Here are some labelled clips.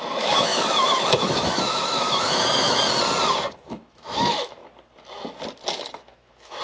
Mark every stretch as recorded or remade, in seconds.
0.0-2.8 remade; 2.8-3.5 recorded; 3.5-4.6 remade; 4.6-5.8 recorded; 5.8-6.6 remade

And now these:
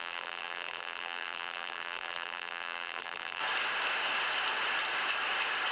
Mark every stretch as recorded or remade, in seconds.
0.0-3.4 remade; 3.4-5.7 recorded

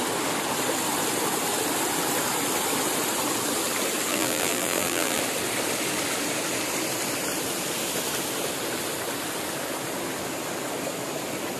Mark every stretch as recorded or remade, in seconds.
0.0-4.1 recorded; 4.1-5.2 remade; 5.2-11.6 recorded

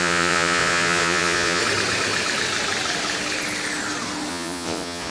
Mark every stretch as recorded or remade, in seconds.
0.0-1.6 remade; 1.6-4.3 recorded; 4.3-5.1 remade